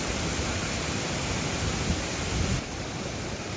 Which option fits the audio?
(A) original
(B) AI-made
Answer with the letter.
A